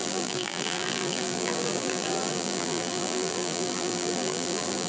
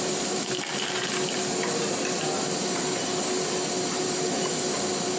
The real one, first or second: second